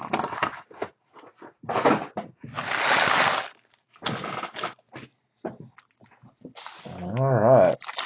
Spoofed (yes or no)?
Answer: no